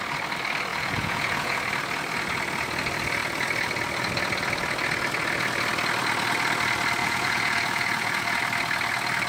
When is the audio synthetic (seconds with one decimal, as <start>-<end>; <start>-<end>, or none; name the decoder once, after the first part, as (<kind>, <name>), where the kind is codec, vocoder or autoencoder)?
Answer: 0.7-1.6 (vocoder, Vocos); 7.0-8.4